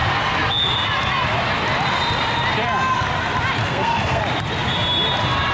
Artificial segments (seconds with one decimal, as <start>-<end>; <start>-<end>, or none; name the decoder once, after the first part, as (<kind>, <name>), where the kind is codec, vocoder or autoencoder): 3.6-4.2 (codec, SNAC)